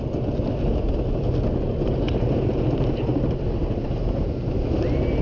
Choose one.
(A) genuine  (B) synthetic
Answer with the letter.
A